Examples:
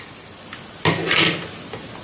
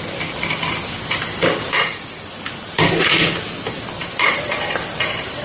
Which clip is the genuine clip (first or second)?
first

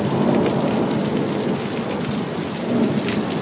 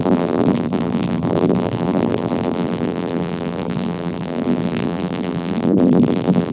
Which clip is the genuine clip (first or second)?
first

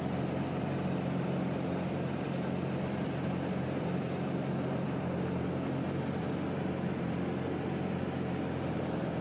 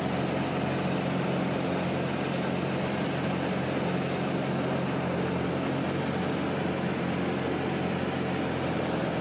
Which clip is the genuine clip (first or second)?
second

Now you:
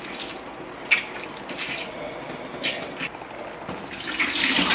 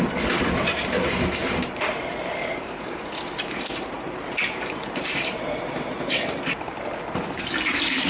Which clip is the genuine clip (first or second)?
first